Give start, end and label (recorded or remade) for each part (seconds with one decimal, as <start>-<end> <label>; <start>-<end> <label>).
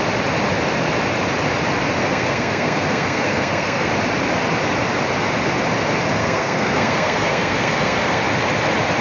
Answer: 0.0-2.0 recorded; 2.0-3.9 remade; 3.9-6.2 recorded; 6.2-8.2 remade; 8.2-9.0 recorded